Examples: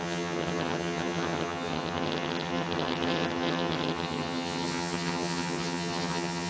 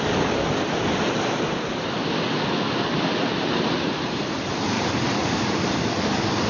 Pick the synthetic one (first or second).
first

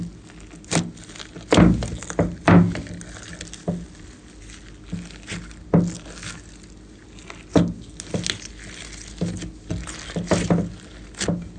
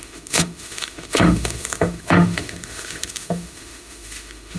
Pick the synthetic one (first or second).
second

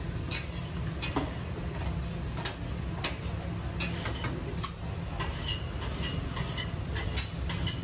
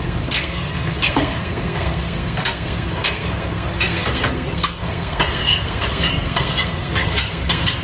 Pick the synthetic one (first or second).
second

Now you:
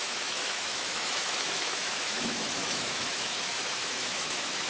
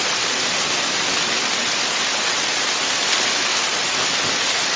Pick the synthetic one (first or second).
first